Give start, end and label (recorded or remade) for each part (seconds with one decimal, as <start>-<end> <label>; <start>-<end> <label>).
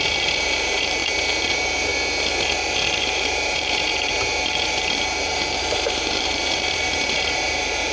0.0-1.0 remade; 1.0-1.5 recorded; 1.5-1.9 remade; 1.9-3.0 recorded; 3.0-7.9 remade